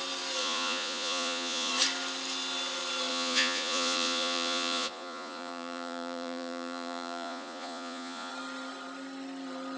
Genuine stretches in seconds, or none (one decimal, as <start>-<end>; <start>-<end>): 0.0-0.4; 1.7-3.1; 8.3-9.8